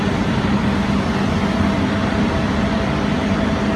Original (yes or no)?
yes